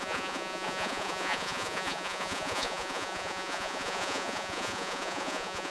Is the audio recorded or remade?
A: remade